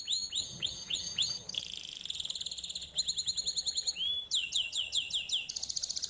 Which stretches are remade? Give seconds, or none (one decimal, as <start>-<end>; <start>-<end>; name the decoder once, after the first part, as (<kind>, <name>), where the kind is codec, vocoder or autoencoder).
0.4-1.6 (vocoder, HiFi-GAN); 4.4-5.1